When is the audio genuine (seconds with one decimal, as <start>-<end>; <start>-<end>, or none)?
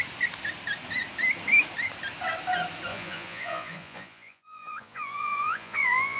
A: 0.0-2.9